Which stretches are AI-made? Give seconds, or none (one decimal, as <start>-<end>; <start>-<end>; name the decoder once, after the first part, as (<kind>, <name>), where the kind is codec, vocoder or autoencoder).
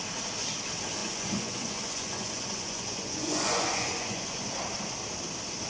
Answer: 1.0-4.4 (vocoder, Vocos)